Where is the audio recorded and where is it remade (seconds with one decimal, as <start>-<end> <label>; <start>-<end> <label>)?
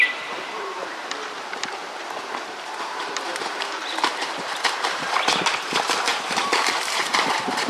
0.0-7.7 remade